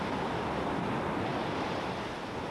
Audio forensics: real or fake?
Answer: real